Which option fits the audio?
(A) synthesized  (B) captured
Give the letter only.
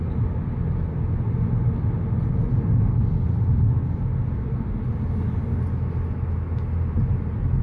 B